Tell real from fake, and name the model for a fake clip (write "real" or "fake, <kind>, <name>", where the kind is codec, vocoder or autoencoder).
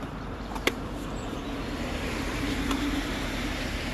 fake, vocoder, BigVGAN v2